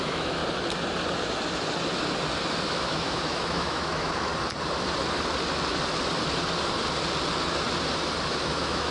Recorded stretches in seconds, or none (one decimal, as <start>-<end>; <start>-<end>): 0.4-2.7; 4.3-8.5